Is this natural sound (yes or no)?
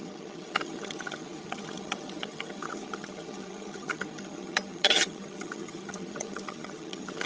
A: no